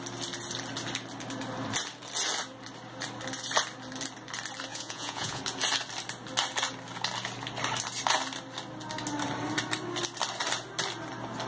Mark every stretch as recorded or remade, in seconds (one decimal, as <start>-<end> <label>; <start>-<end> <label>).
0.0-4.7 recorded; 4.7-5.4 remade; 5.4-11.5 recorded